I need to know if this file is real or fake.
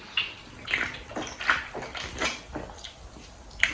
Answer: real